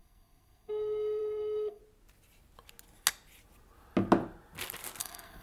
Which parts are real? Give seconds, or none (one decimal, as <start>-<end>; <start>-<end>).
1.8-5.0